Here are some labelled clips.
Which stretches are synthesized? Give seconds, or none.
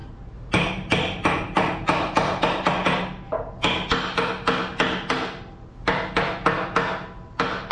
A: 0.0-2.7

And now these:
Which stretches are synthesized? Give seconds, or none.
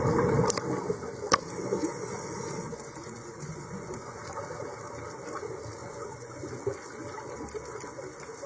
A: 1.8-4.2; 5.8-6.5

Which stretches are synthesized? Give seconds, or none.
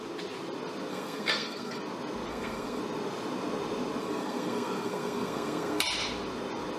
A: 0.9-1.8; 2.3-2.8; 4.0-5.8